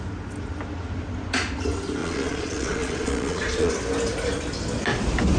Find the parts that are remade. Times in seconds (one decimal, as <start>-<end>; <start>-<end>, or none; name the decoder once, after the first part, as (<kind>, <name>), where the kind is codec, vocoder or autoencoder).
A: 2.0-3.7 (vocoder, Vocos)